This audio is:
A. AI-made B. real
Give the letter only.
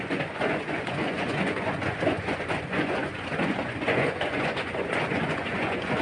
A